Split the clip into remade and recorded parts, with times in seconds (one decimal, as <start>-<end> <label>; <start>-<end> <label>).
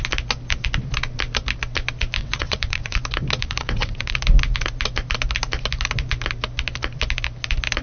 0.0-2.2 recorded; 2.2-3.0 remade; 3.0-3.4 recorded; 3.4-4.2 remade; 4.2-7.8 recorded